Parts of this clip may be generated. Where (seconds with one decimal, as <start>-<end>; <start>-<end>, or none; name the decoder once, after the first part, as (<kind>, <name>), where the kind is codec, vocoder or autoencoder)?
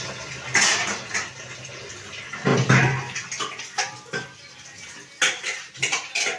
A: none